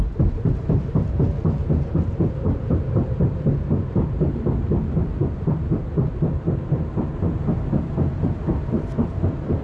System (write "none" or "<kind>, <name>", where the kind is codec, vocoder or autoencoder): none